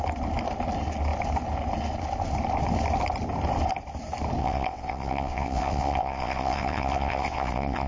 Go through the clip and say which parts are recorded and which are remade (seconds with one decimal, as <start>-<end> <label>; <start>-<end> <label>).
0.0-4.4 recorded; 4.4-7.9 remade